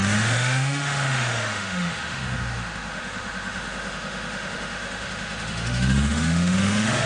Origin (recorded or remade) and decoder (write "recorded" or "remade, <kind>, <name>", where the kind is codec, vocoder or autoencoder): remade, autoencoder, DAC-VAE